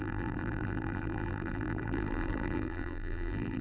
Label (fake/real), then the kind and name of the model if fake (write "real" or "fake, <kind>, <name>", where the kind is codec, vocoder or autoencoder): fake, vocoder, BigVGAN v2